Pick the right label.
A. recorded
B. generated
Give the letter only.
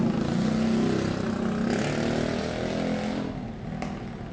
A